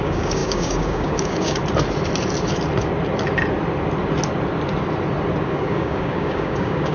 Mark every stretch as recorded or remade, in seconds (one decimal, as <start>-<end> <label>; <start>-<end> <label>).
0.0-1.6 remade; 1.6-5.4 recorded; 5.4-6.9 remade

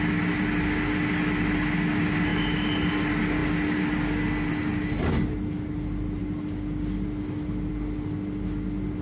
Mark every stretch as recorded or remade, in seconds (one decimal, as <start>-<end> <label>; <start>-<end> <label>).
0.0-9.0 recorded

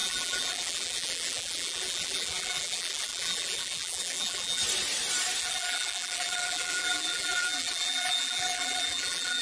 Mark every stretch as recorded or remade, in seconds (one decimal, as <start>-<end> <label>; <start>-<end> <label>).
0.0-4.6 remade; 4.6-5.4 recorded; 5.4-9.4 remade

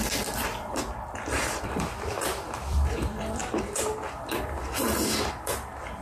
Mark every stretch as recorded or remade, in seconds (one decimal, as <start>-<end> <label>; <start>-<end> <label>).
0.0-6.0 remade

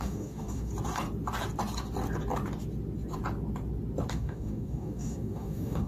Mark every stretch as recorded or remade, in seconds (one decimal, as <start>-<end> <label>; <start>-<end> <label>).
0.0-0.7 remade; 0.7-4.1 recorded; 4.1-5.9 remade

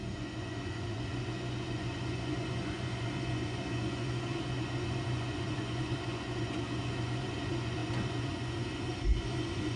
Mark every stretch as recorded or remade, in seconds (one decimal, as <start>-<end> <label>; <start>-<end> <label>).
0.0-9.8 remade

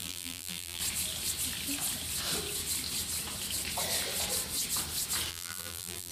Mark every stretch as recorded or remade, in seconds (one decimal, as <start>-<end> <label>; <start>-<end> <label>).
0.0-0.8 remade; 0.8-5.3 recorded; 5.3-6.1 remade